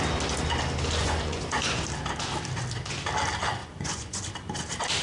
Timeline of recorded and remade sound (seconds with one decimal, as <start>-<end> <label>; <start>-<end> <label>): 0.0-1.0 recorded; 1.0-1.8 remade; 1.8-3.6 recorded; 3.6-4.2 remade; 4.2-5.0 recorded